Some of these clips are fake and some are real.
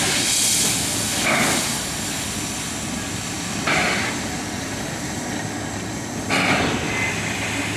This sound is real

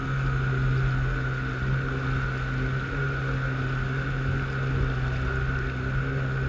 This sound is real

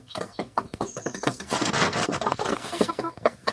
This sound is fake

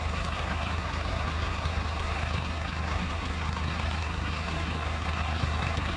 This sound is fake